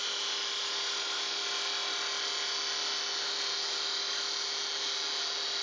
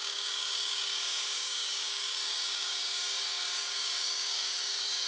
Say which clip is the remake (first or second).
second